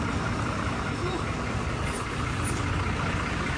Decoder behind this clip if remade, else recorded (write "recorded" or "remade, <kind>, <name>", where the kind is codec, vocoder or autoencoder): recorded